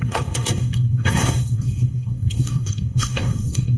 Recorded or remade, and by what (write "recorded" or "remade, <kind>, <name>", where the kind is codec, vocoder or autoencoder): remade, codec, SNAC